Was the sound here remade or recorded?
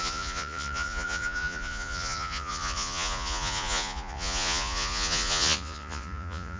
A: remade